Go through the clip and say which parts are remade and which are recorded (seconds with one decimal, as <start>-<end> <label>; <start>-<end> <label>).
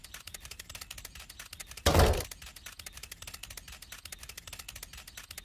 0.0-0.7 remade; 0.7-5.4 recorded